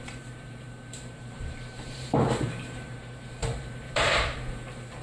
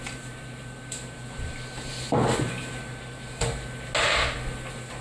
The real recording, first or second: second